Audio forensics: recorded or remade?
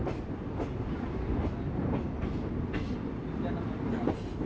recorded